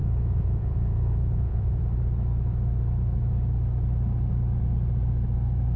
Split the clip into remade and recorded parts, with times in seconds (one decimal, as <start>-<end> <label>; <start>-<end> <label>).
0.0-1.8 remade; 1.8-5.8 recorded